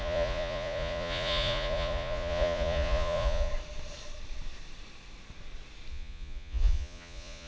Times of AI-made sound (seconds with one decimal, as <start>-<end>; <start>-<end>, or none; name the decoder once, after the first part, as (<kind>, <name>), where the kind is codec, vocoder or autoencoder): 0.0-3.5 (vocoder, Vocos); 5.9-7.5